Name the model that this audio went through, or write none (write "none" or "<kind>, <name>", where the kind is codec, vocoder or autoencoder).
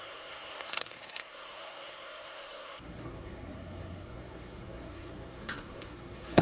codec, SNAC